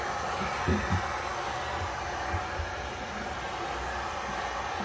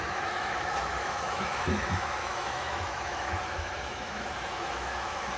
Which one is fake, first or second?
second